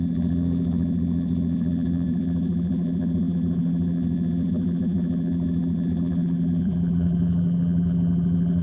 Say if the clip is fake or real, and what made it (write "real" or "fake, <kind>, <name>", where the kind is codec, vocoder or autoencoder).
fake, vocoder, BigVGAN v2